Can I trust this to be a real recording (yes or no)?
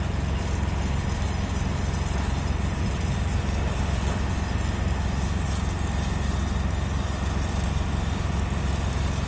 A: yes